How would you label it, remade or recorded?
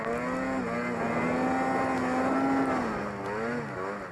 recorded